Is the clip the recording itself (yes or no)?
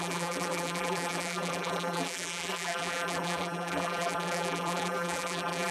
no